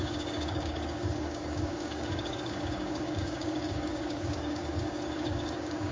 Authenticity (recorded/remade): remade